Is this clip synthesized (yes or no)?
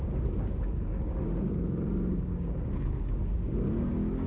yes